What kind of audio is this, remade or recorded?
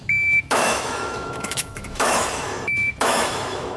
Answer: remade